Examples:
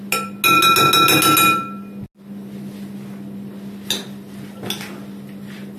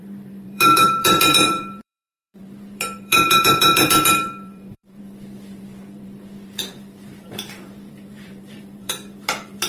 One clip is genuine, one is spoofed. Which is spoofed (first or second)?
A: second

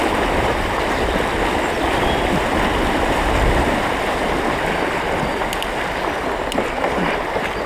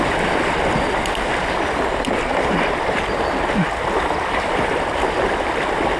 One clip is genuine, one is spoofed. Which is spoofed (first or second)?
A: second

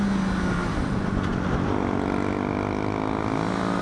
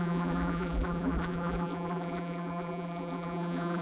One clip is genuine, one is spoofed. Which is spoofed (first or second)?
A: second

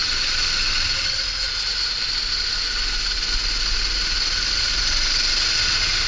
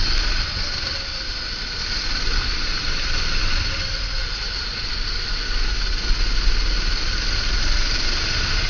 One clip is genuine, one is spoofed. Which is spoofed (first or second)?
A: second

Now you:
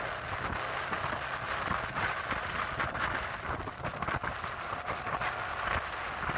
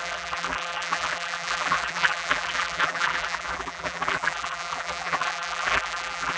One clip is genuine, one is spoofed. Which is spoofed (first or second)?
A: second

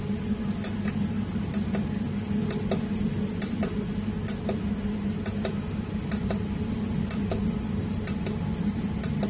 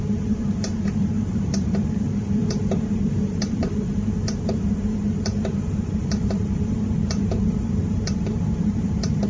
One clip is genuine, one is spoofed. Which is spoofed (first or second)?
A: second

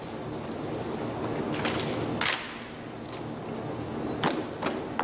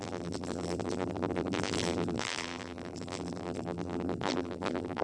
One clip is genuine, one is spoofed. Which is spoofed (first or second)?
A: second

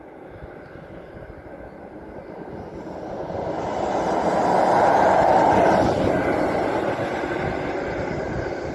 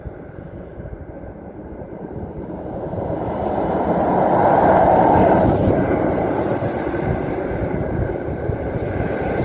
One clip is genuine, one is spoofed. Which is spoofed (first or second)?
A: second